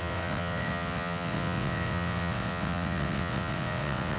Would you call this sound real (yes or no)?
no